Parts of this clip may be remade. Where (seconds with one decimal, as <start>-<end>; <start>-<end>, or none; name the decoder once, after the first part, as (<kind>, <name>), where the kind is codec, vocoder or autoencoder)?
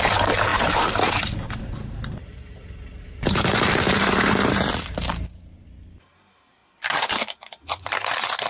0.0-8.5 (vocoder, BigVGAN v2)